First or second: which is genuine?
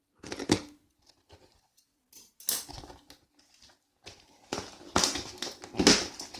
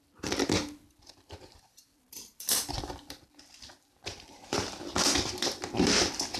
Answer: first